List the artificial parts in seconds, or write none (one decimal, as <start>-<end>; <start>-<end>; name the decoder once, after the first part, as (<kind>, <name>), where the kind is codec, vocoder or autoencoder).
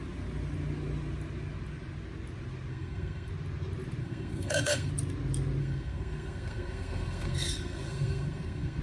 2.7-3.3 (codec, SNAC); 4.0-4.9; 5.6-8.8